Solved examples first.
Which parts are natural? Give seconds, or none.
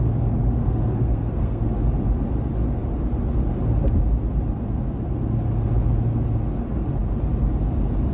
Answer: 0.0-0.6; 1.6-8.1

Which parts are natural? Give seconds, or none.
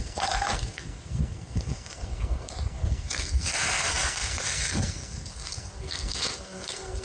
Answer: none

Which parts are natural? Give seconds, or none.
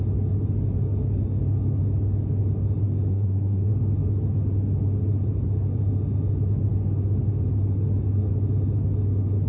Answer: 0.0-3.1; 3.7-9.5